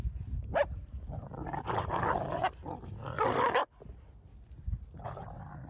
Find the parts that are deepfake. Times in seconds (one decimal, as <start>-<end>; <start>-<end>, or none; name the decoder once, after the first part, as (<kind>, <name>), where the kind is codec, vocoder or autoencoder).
0.0-2.0 (vocoder, BigVGAN v2)